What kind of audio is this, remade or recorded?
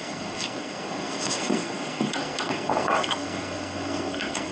remade